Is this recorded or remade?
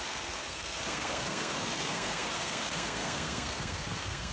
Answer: remade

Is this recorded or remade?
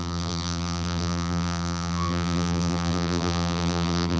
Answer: remade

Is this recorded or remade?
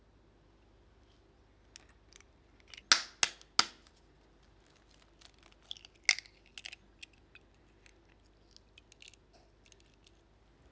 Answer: recorded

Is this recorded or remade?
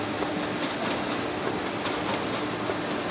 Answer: recorded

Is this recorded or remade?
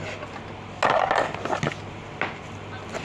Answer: recorded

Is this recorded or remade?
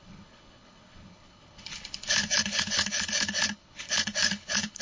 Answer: remade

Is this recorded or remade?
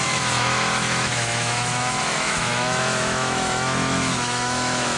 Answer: remade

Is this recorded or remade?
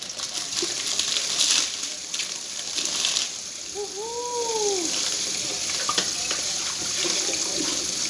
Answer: recorded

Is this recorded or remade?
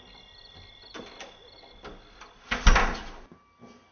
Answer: recorded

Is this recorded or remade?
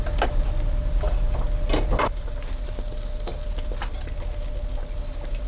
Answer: recorded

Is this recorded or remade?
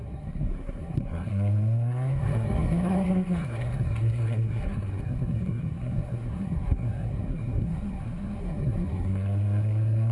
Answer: remade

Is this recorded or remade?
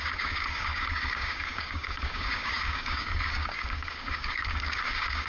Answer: remade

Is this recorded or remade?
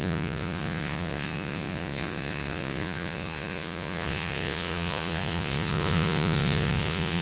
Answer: remade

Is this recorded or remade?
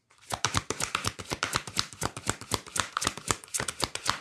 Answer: remade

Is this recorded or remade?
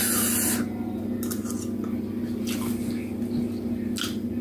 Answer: recorded